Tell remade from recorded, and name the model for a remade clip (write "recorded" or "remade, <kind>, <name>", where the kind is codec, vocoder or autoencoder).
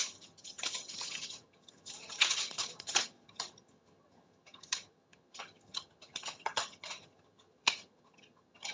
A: remade, vocoder, HiFi-GAN